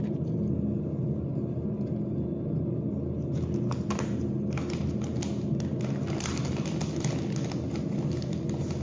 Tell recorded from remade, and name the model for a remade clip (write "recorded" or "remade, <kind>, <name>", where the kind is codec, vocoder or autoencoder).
recorded